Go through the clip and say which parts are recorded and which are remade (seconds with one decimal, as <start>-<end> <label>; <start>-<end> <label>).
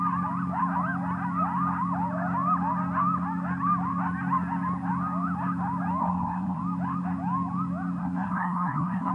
0.0-6.0 recorded; 6.0-6.6 remade; 6.6-8.0 recorded; 8.0-9.1 remade